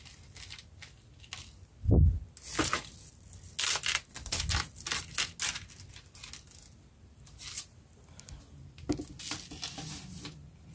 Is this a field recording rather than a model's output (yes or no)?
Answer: yes